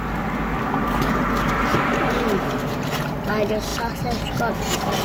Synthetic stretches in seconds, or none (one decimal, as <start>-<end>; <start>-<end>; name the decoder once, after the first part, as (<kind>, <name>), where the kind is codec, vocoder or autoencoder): 1.7-3.3 (vocoder, BigVGAN v2)